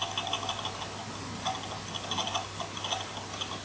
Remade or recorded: recorded